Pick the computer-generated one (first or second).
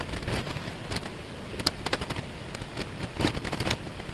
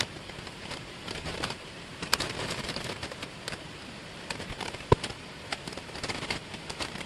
second